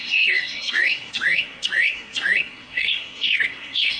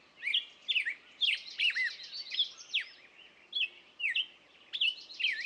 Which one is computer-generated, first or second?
first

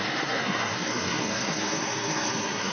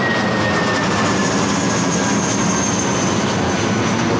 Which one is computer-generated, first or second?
first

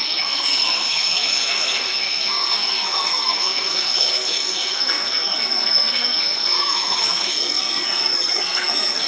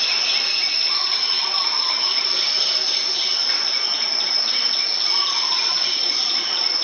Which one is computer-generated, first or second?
first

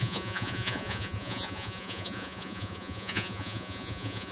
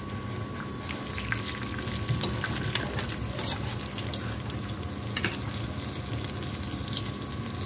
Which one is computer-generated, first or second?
first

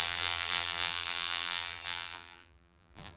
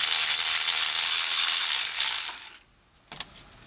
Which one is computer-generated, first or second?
first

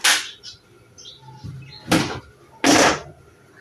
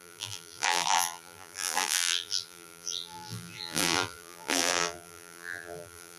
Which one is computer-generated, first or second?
second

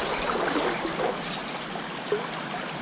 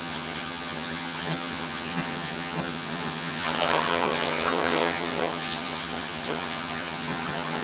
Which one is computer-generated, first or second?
second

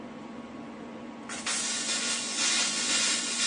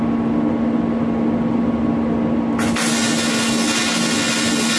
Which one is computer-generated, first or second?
first